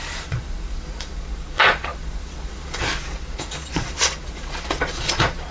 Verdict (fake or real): fake